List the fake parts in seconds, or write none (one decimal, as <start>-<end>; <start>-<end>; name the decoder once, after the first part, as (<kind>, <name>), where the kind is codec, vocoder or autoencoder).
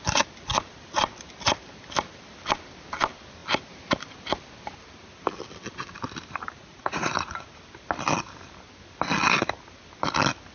6.6-7.6 (vocoder, Vocos)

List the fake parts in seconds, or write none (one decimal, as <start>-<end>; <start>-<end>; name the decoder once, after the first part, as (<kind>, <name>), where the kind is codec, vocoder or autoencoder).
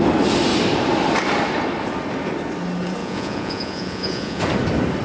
3.0-4.4 (vocoder, Vocos)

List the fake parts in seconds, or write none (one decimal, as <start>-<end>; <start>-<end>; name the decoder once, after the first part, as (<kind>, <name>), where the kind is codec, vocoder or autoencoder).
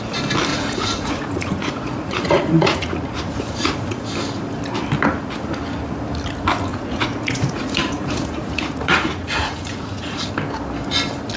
0.5-4.1 (vocoder, Vocos); 6.7-10.3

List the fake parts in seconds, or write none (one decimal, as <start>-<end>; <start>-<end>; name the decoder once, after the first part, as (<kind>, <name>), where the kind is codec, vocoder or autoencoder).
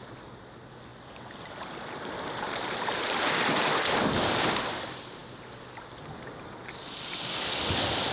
none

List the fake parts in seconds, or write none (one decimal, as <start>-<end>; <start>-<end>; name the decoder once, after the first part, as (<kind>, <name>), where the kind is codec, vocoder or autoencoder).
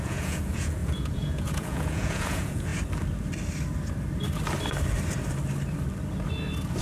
0.0-2.7 (vocoder, Vocos)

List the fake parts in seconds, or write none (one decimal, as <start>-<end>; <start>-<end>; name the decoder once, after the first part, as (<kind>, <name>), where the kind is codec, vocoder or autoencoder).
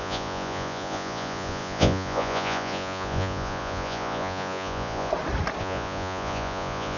0.0-5.1 (vocoder, Vocos); 5.6-7.0